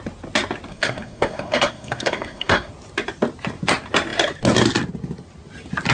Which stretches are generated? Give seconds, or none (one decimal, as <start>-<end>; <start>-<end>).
0.7-2.7